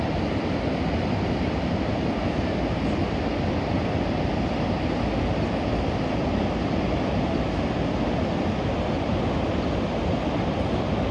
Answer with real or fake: real